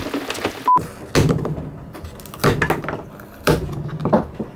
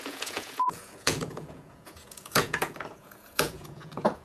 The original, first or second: first